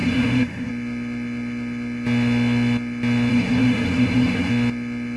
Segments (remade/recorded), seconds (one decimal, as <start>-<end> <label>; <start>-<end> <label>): 0.0-0.7 remade; 0.7-3.3 recorded; 3.3-4.5 remade; 4.5-5.2 recorded